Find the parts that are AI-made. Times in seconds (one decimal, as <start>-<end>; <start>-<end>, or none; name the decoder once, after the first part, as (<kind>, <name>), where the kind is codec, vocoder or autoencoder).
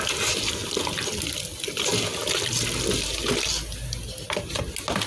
none